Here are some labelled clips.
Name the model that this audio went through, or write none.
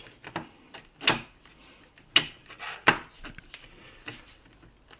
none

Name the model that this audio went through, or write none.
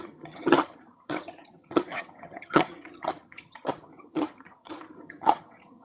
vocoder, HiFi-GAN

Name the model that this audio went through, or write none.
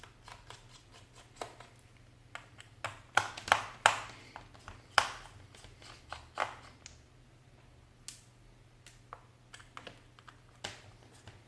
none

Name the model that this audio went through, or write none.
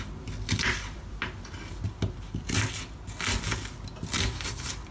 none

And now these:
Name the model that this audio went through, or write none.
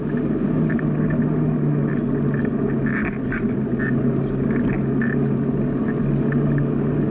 none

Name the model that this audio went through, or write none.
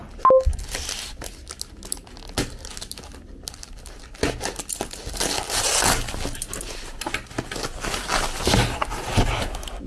none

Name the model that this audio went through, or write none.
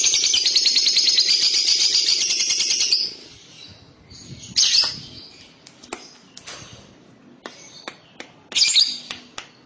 none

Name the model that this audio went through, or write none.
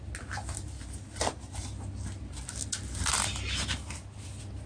none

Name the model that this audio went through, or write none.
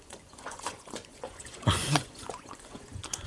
vocoder, Vocos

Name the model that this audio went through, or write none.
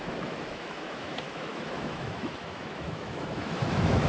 autoencoder, DAC-VAE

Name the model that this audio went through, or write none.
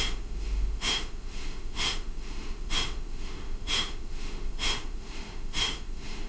autoencoder, DAC-VAE